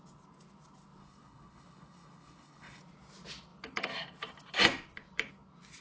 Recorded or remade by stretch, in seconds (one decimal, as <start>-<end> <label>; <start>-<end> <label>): 0.0-1.0 recorded; 1.0-2.8 remade; 2.8-5.8 recorded